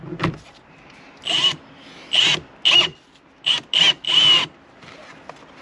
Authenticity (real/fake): real